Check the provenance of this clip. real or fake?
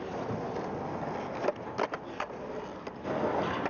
real